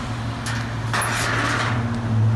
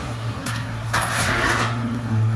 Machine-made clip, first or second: second